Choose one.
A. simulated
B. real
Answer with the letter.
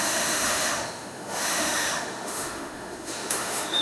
A